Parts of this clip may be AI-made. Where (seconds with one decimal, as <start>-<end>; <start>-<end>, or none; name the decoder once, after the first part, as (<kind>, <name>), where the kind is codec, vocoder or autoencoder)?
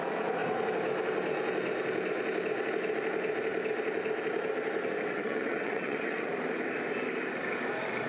5.1-6.3 (vocoder, WaveNeXt)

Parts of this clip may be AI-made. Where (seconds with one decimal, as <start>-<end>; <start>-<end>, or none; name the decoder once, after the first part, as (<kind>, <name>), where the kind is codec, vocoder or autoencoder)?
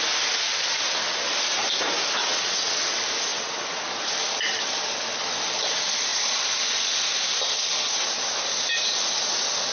2.2-2.8 (vocoder, WaveNeXt); 3.3-3.8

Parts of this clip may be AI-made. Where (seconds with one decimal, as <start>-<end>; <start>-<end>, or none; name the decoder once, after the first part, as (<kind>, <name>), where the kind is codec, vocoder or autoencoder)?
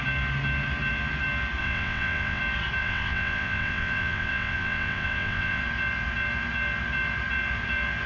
1.6-2.4 (vocoder, WaveNeXt); 2.8-5.6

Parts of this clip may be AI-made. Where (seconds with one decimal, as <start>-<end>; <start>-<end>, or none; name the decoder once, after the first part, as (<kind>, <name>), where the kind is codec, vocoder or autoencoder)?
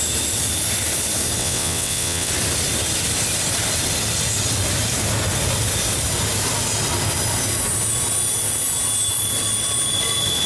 1.4-2.3 (vocoder, WaveNeXt)